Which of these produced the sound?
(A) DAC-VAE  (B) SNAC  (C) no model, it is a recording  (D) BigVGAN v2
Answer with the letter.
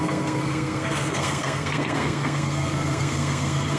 B